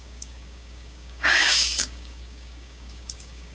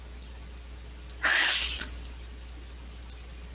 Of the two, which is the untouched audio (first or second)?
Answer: second